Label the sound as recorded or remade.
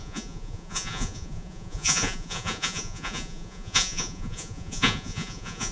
remade